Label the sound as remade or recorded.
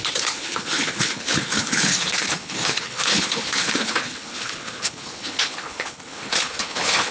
remade